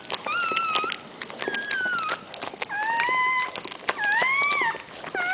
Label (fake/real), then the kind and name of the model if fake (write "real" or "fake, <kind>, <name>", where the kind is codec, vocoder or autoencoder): real